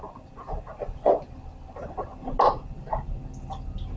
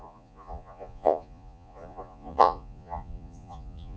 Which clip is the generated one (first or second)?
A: second